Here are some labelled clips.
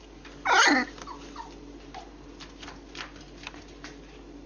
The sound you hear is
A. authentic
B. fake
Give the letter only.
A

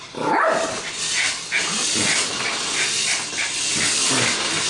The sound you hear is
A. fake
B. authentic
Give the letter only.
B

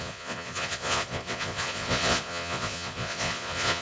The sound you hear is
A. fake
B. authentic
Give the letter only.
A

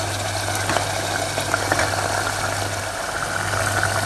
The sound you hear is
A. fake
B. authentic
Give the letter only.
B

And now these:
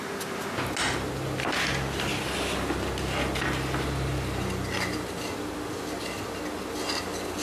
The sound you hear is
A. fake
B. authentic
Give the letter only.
B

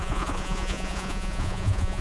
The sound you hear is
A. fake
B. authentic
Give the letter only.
A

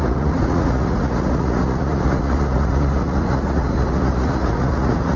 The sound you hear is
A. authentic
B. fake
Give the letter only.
B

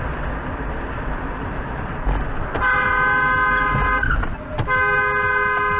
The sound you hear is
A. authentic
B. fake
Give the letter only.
A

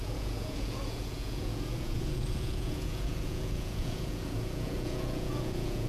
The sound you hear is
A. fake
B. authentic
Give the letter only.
A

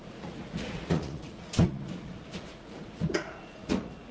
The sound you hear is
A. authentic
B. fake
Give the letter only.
B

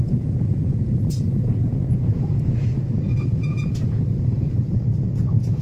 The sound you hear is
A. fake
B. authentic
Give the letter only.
A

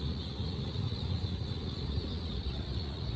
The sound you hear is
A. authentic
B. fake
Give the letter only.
B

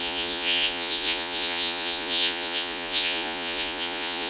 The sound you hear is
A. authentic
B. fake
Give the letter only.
B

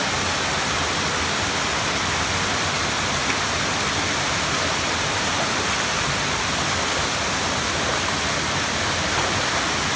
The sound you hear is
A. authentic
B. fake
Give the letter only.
A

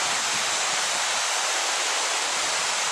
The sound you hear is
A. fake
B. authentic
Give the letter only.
B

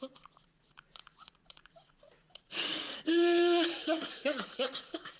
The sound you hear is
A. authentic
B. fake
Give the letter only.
B